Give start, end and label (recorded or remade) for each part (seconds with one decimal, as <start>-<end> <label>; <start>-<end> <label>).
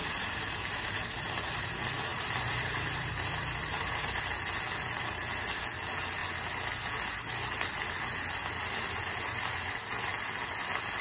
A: 0.0-1.7 remade; 1.7-2.1 recorded; 2.1-4.2 remade; 4.2-11.0 recorded